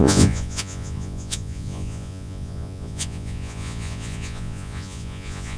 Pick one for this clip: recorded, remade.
remade